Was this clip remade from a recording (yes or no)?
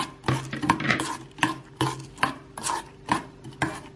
no